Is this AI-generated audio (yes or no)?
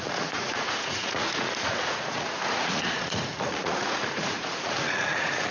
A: yes